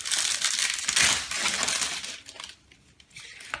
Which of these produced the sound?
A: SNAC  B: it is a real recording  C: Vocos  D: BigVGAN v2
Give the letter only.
B